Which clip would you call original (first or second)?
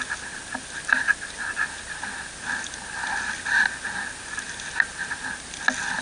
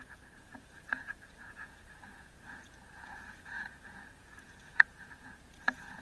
first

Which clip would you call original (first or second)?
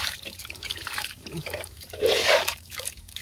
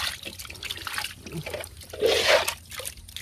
second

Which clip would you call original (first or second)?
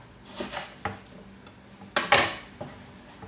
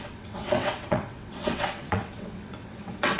first